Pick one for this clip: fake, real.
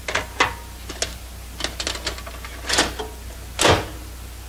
real